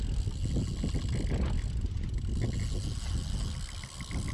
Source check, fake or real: real